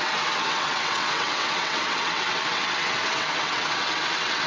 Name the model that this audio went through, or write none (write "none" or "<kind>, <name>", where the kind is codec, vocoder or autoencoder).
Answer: vocoder, WaveNeXt